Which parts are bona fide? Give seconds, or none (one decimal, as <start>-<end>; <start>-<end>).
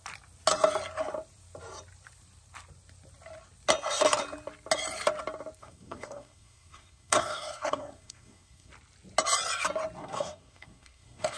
0.0-5.6; 8.7-10.0